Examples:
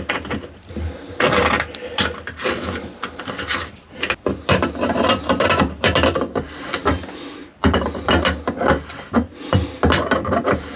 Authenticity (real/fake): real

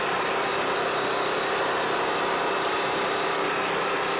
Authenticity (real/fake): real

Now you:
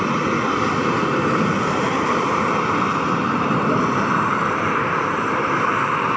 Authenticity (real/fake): fake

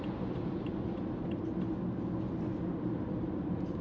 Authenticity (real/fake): real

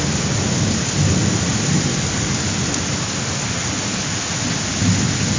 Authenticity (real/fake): real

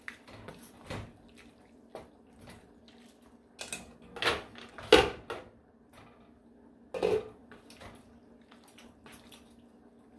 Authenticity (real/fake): real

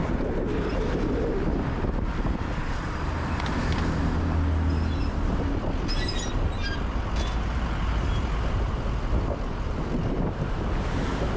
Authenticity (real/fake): real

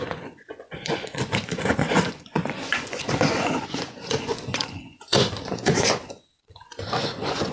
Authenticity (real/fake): fake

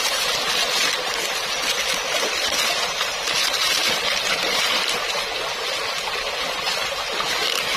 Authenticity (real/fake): real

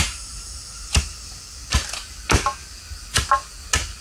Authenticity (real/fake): real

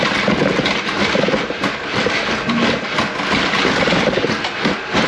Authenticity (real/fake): real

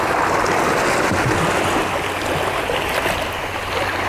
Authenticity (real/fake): real